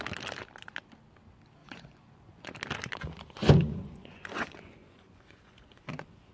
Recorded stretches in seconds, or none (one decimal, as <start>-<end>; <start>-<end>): 0.0-1.6; 2.5-3.4